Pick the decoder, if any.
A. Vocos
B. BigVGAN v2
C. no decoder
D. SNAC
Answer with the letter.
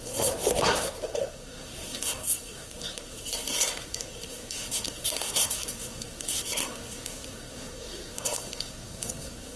D